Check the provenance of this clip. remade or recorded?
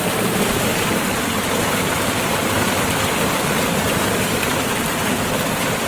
remade